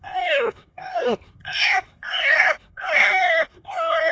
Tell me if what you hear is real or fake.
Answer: fake